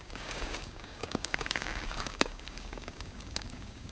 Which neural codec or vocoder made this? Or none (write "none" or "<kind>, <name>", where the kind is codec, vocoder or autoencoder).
codec, DAC